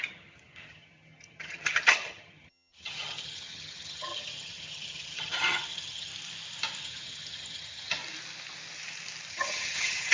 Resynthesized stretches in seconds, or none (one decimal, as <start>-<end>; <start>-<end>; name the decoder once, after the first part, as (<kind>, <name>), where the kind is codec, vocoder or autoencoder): 0.0-6.1 (vocoder, HiFi-GAN); 6.8-8.0; 9.3-10.1